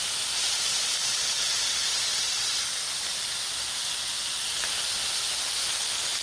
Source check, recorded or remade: recorded